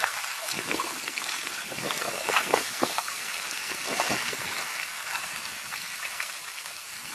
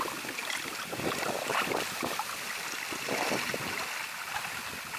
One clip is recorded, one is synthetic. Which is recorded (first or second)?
second